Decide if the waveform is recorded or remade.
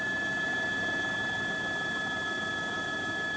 recorded